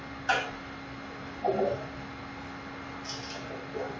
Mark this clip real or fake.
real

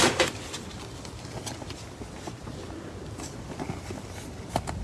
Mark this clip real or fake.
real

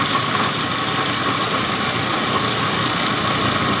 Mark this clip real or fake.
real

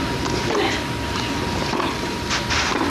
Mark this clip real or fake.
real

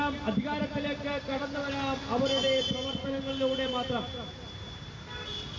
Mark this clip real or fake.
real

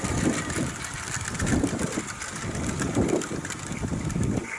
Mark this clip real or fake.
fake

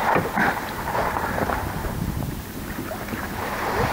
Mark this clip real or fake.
fake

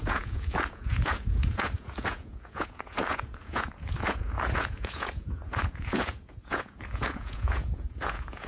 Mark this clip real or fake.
fake